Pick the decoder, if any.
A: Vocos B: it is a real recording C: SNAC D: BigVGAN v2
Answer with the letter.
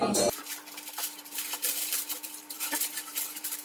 D